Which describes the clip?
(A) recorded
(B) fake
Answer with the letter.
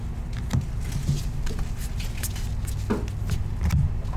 A